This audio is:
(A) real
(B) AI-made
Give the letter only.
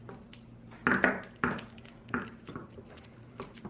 A